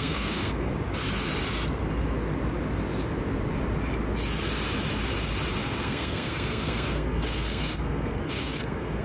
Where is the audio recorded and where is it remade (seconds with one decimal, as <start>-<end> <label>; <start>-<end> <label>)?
0.0-0.7 remade; 0.7-5.6 recorded; 5.6-9.0 remade